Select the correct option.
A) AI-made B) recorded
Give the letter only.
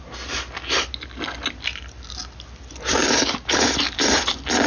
B